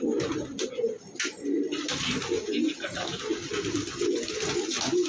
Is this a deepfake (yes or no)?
no